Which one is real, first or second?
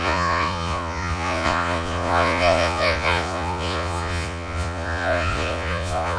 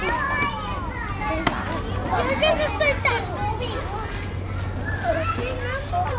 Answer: second